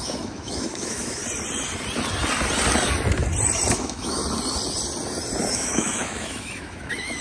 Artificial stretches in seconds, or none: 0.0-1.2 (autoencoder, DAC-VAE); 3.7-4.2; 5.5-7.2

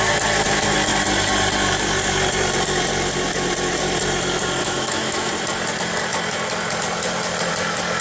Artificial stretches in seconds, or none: 4.6-5.3 (autoencoder, DAC-VAE)

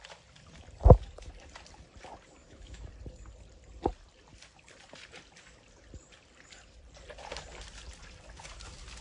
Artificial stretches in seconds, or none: 2.4-2.9 (autoencoder, DAC-VAE)

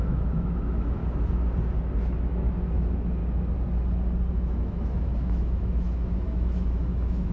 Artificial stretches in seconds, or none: 0.0-1.0 (autoencoder, DAC-VAE); 2.0-3.2; 4.3-7.3

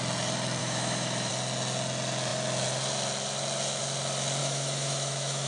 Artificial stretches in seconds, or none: 0.6-1.3 (autoencoder, DAC-VAE); 4.4-5.5

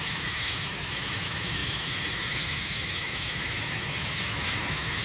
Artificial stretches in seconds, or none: 0.0-5.0 (autoencoder, DAC-VAE)